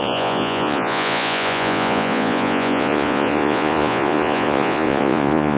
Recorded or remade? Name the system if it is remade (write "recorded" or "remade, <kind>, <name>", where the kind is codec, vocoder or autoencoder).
remade, vocoder, Vocos